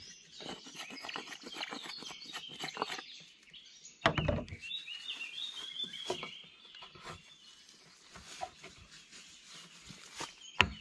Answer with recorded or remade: recorded